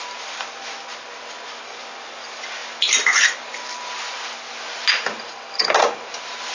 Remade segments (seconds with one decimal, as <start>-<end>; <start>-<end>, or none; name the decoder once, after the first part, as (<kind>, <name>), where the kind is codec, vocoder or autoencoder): none